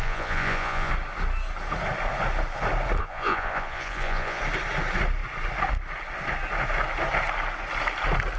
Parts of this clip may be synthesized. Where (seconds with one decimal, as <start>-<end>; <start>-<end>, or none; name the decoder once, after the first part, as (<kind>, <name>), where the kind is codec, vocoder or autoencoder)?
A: 0.0-0.9 (vocoder, Vocos); 3.0-4.4